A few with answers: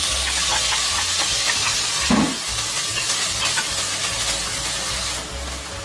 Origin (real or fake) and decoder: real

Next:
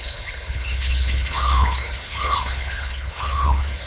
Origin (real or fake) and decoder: fake, codec, HILCodec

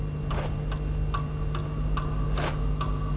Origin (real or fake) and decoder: real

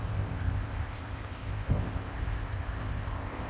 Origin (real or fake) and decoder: fake, codec, ZipCodec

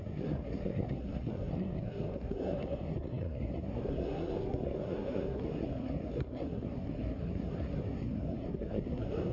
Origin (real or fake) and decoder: fake, codec, SNAC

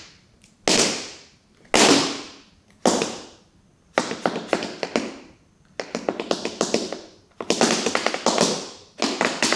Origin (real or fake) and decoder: real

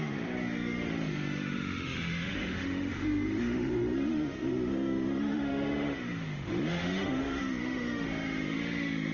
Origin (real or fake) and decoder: fake, autoencoder, DAC-VAE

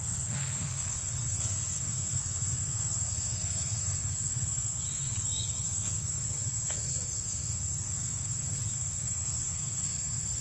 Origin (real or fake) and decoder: fake, codec, SNAC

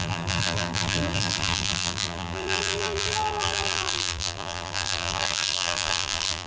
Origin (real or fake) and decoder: fake, vocoder, BigVGAN v2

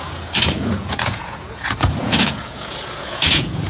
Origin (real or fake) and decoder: fake, vocoder, Vocos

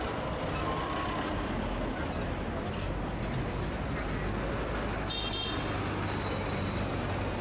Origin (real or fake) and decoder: real